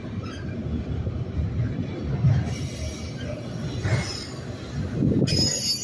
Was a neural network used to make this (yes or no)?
no